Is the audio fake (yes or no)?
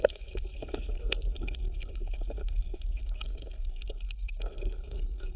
yes